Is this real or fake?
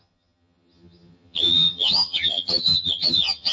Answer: fake